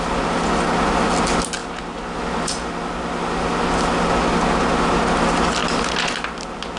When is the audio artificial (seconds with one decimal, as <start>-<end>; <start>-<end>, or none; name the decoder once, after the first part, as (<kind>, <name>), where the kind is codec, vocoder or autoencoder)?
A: none